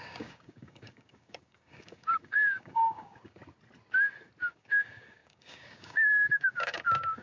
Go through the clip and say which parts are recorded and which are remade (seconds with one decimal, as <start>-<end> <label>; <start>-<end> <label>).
0.0-3.4 remade; 3.4-4.5 recorded; 4.5-7.2 remade